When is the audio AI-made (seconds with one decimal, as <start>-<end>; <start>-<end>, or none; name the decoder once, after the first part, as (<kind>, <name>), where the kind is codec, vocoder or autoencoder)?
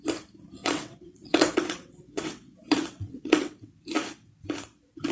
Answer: 0.6-3.7 (vocoder, WaveNeXt)